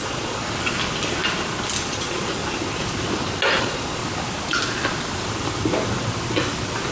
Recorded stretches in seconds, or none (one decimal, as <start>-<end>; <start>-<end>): 0.4-1.9; 2.4-3.6; 4.0-6.9